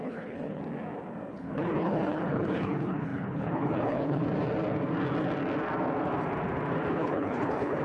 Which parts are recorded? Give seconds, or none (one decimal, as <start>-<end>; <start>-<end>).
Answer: 0.6-1.3; 4.2-6.9